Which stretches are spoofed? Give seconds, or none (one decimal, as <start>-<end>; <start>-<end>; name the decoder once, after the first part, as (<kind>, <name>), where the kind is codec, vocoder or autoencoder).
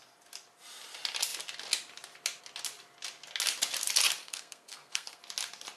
4.2-5.2 (codec, SNAC)